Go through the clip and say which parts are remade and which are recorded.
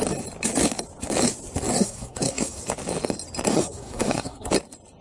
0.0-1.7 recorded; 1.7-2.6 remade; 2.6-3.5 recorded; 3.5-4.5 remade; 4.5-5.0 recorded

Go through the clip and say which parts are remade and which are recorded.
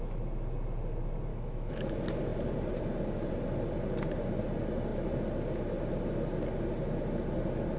0.0-1.3 recorded; 1.3-1.9 remade; 1.9-7.8 recorded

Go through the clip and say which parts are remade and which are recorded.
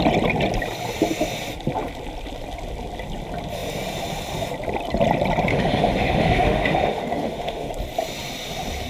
0.0-5.5 recorded; 5.5-7.7 remade; 7.7-8.9 recorded